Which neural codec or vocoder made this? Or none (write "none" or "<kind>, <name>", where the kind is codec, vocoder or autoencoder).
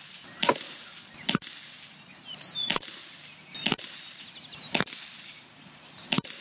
none